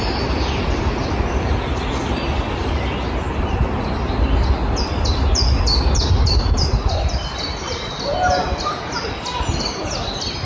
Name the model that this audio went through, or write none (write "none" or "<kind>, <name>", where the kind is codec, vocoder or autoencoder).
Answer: none